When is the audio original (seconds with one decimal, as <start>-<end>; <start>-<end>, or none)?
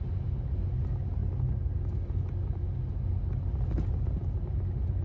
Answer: 0.0-5.0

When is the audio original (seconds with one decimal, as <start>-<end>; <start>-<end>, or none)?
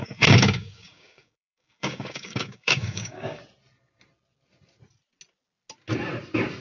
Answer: 3.4-6.6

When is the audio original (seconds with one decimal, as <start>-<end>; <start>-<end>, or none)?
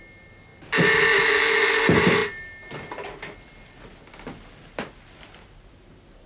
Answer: 0.0-6.3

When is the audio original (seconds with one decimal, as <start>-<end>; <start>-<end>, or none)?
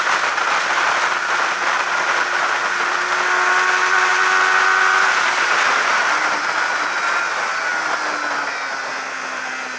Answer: 0.0-9.8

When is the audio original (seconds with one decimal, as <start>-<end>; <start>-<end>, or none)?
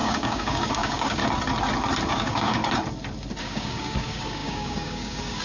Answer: 1.2-2.1; 2.6-3.4